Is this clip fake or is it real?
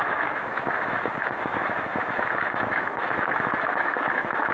fake